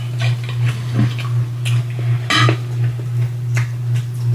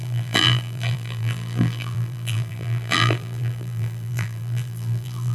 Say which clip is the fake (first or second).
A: second